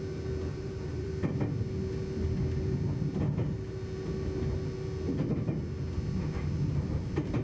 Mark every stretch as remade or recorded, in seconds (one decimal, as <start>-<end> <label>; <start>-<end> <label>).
0.0-0.5 recorded; 0.5-1.1 remade; 1.1-7.4 recorded

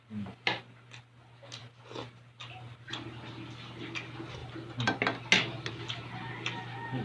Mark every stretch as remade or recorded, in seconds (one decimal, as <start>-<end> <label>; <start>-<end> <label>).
0.0-7.0 recorded

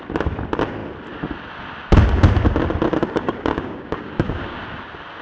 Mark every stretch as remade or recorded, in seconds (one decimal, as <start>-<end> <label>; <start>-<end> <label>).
0.0-3.0 recorded; 3.0-4.6 remade; 4.6-5.2 recorded

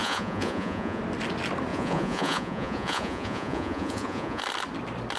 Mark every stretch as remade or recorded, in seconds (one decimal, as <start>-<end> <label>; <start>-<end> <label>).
0.0-1.0 remade; 1.0-1.7 recorded; 1.7-4.4 remade; 4.4-5.2 recorded

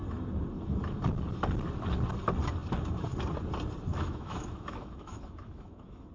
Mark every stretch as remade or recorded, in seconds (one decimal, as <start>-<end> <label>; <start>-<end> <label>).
0.0-3.9 recorded; 3.9-6.1 remade